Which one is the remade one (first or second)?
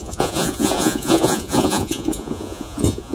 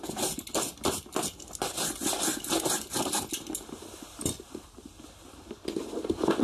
first